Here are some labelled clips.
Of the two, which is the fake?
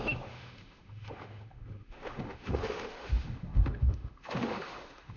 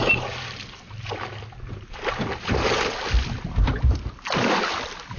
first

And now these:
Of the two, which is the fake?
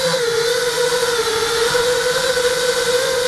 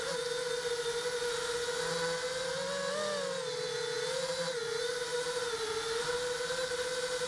first